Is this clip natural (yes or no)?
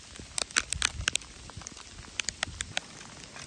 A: yes